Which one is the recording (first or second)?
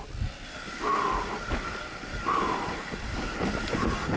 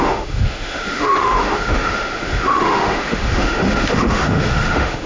first